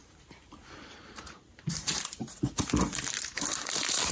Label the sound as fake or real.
fake